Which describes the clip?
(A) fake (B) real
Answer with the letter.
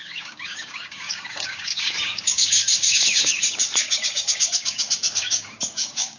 A